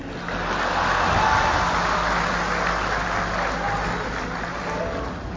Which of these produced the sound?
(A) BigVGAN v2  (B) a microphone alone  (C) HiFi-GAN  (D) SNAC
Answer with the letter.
B